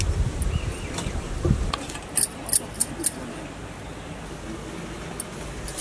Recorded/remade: recorded